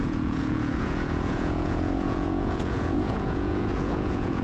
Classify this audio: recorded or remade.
remade